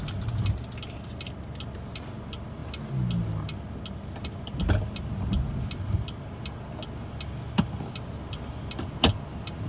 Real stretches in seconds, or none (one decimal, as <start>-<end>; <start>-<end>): 0.0-9.7